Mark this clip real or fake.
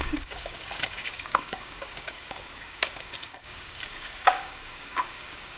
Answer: fake